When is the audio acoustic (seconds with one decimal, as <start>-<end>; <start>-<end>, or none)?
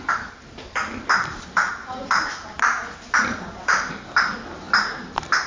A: 0.0-1.8; 3.9-5.5